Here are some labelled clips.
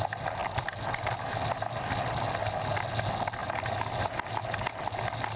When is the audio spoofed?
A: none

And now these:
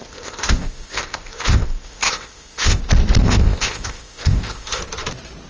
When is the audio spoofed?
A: 0.0-2.8 (codec, ZipCodec); 3.2-4.8